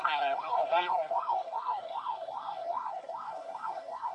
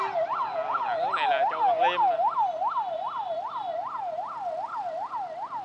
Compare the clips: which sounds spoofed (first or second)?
first